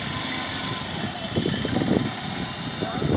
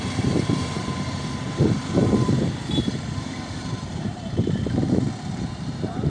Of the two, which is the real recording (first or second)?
first